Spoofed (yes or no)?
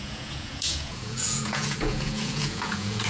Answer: yes